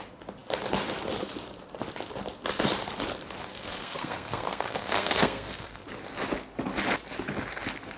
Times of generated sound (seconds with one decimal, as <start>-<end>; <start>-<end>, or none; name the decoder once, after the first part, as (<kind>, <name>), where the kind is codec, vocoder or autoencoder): 3.5-5.8 (codec, SNAC)